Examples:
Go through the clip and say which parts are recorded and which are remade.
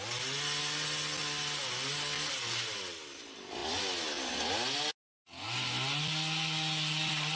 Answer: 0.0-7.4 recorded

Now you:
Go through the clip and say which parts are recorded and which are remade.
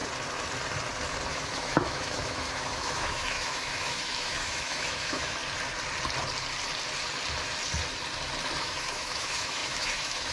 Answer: 0.0-1.3 recorded; 1.3-5.4 remade; 5.4-8.6 recorded; 8.6-10.3 remade